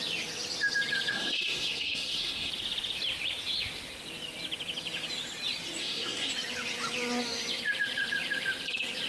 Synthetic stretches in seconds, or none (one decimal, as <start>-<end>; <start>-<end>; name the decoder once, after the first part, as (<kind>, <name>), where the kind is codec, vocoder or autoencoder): 1.1-2.5 (codec, SNAC); 5.8-6.3